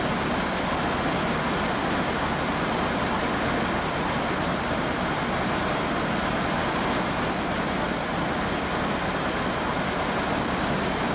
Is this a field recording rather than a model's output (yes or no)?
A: yes